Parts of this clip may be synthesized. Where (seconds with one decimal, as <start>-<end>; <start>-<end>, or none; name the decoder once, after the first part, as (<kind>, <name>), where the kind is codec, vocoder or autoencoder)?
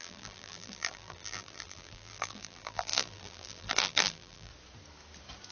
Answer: 0.0-4.5 (vocoder, BigVGAN v2)